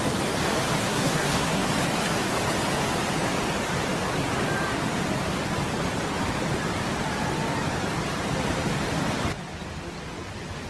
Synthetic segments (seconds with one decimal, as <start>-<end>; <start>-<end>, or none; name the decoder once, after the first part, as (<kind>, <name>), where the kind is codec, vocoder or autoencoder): 0.8-1.7 (codec, SNAC)